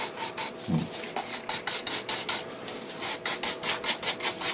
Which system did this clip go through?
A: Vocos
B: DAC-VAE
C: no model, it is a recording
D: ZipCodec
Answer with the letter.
C